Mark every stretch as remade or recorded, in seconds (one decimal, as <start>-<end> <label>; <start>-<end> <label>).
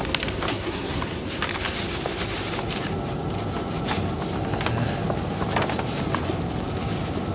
0.0-0.5 recorded; 0.5-1.0 remade; 1.0-7.3 recorded